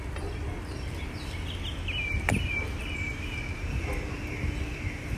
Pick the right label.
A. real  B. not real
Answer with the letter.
A